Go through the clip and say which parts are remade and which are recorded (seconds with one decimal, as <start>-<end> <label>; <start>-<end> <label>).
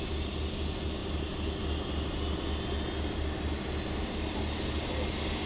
0.0-5.5 recorded